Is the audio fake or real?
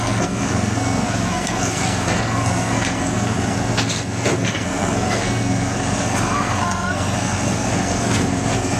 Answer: fake